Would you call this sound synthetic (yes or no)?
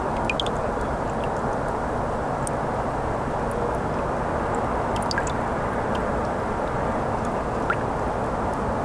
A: no